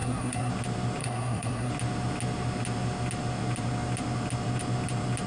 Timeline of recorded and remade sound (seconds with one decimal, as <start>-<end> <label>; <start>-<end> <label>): 0.0-0.5 remade; 0.5-1.0 recorded; 1.0-1.7 remade; 1.7-5.3 recorded